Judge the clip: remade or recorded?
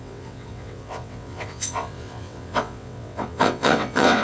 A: remade